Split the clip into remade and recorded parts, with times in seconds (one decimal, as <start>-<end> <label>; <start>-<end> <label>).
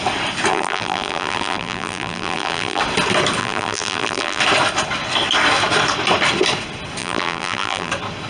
0.0-0.5 recorded; 0.5-2.8 remade; 2.8-3.4 recorded; 3.4-4.4 remade; 4.4-7.0 recorded; 7.0-7.9 remade; 7.9-8.3 recorded